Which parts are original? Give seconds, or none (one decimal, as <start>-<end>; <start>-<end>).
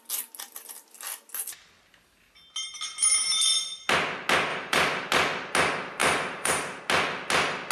0.0-4.5; 5.1-6.0; 6.8-7.7